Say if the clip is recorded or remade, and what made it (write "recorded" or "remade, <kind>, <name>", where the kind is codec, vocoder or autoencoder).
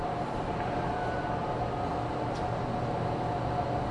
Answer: recorded